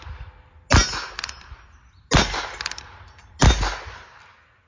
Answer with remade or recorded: recorded